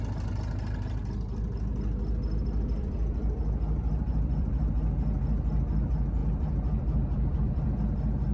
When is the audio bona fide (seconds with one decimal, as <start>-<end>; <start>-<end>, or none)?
0.0-1.7; 4.6-6.2; 7.8-8.3